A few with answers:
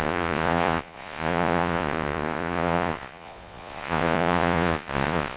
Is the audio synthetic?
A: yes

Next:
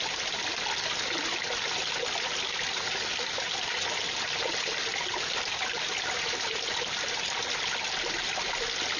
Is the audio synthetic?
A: no